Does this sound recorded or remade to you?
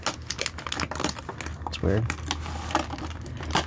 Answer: recorded